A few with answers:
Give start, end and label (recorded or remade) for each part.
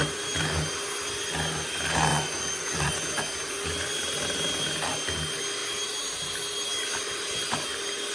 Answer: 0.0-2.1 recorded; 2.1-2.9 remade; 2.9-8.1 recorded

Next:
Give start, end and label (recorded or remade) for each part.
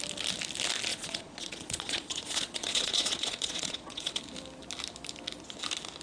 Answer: 0.0-0.9 recorded; 0.9-4.2 remade; 4.2-6.0 recorded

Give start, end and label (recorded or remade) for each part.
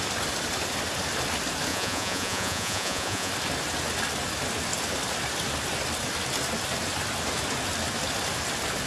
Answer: 0.0-1.7 recorded; 1.7-3.3 remade; 3.3-8.9 recorded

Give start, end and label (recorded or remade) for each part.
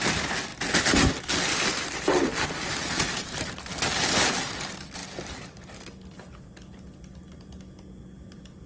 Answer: 0.0-8.7 recorded